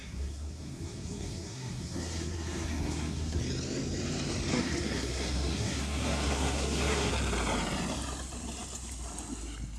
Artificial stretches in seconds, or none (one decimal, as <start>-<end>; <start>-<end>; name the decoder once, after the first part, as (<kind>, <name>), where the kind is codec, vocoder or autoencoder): 0.0-3.4 (codec, SNAC); 4.5-7.1